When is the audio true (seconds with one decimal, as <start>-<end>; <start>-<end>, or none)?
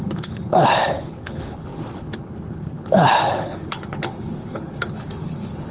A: none